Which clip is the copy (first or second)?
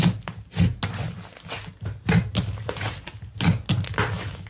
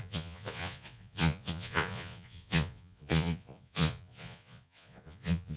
second